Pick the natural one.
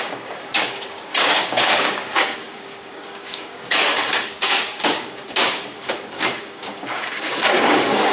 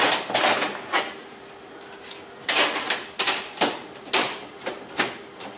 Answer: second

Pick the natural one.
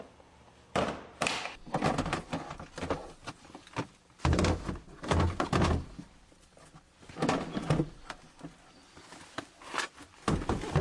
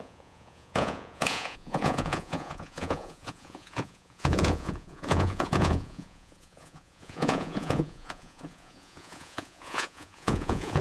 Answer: first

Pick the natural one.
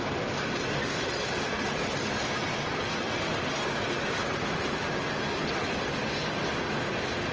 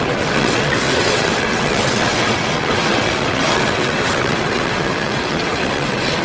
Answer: first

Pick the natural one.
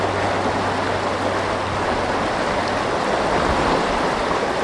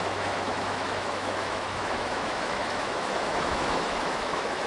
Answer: first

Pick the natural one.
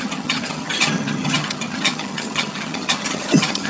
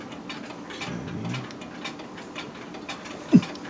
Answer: second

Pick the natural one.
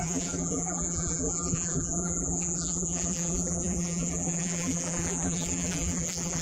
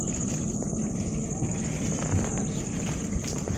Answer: second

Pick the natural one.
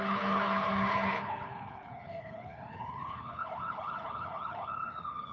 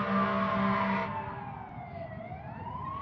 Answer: second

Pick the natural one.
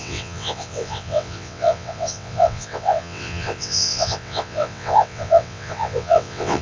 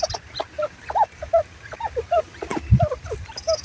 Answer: second